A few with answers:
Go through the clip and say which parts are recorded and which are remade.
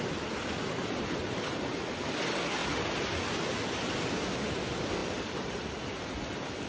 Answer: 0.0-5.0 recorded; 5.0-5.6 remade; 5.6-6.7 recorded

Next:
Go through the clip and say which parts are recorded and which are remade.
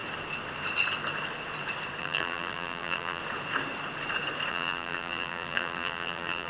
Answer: 0.0-2.0 recorded; 2.0-3.2 remade; 3.2-4.5 recorded; 4.5-6.5 remade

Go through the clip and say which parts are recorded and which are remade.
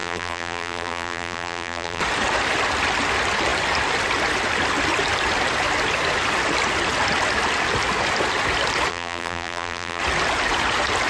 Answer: 0.0-2.0 remade; 2.0-8.9 recorded; 8.9-10.0 remade; 10.0-11.1 recorded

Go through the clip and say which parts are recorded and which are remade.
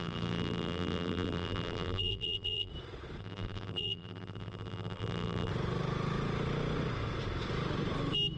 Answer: 0.0-2.7 remade; 2.7-3.2 recorded; 3.2-5.5 remade; 5.5-8.4 recorded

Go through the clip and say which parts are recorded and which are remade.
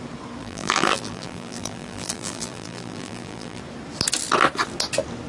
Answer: 0.0-0.4 recorded; 0.4-3.6 remade; 3.6-5.3 recorded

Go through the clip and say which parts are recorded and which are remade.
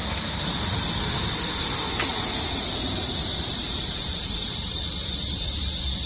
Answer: 0.0-2.4 recorded; 2.4-6.1 remade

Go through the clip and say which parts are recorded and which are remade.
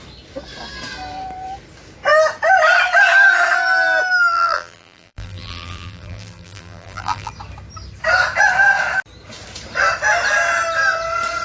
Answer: 0.0-4.3 recorded; 4.3-7.3 remade; 7.3-11.4 recorded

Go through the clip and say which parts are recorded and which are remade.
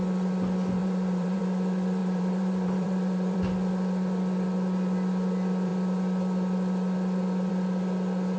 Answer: 0.0-0.8 recorded; 0.8-1.4 remade; 1.4-2.0 recorded; 2.0-3.4 remade; 3.4-8.4 recorded